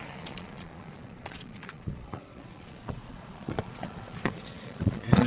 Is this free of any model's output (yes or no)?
no